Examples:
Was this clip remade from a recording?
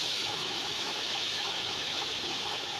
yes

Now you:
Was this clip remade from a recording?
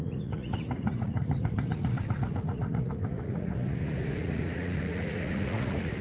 yes